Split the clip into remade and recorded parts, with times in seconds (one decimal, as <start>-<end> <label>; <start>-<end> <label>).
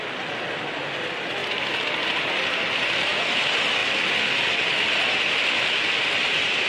0.0-6.7 recorded